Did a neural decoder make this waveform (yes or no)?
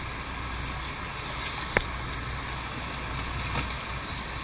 no